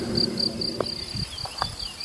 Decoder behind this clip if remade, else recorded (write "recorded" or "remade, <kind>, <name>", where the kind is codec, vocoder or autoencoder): recorded